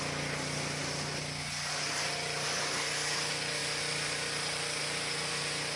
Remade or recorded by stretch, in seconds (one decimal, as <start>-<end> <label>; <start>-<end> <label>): 0.0-5.8 recorded